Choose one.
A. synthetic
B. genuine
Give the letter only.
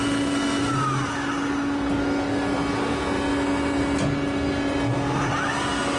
B